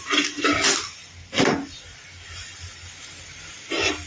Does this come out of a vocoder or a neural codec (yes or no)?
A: no